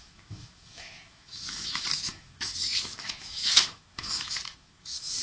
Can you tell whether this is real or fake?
fake